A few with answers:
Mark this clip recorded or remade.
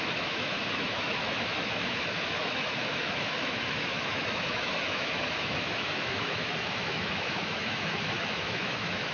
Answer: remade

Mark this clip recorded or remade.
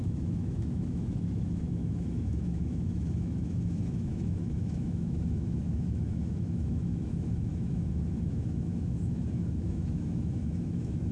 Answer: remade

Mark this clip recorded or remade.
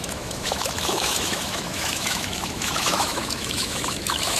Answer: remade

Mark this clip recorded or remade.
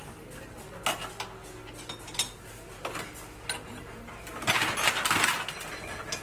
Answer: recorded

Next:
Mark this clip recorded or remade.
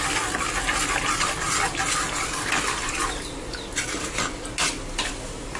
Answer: recorded